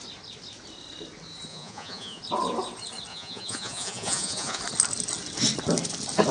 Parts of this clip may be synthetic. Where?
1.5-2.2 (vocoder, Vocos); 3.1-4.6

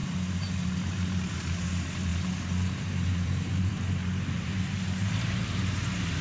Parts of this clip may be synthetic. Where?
0.0-6.2 (vocoder, BigVGAN v2)

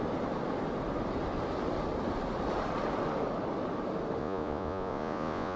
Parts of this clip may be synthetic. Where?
4.2-5.6 (vocoder, Vocos)

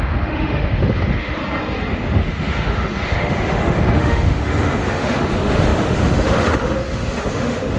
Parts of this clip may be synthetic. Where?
0.0-1.4 (autoencoder, DAC-VAE); 1.9-7.8

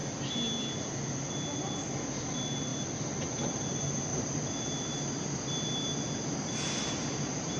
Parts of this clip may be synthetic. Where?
2.7-3.3 (vocoder, BigVGAN v2); 4.1-7.6

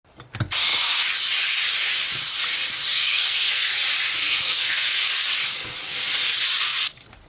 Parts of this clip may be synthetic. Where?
2.9-3.7 (codec, SNAC); 4.2-5.0

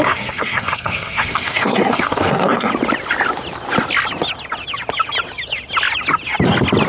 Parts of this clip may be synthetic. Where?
0.0-2.7 (codec, SNAC)

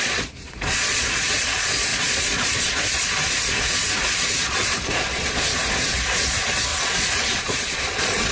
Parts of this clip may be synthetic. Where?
0.0-8.3 (vocoder, Vocos)